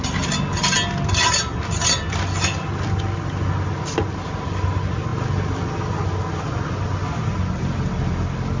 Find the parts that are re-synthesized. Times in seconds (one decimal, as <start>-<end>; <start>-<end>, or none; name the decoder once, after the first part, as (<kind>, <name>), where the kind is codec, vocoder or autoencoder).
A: none